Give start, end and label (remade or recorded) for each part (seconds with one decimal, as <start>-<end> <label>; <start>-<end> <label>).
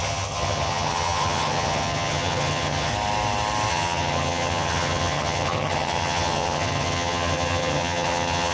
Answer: 0.0-2.9 remade; 2.9-3.7 recorded; 3.7-8.5 remade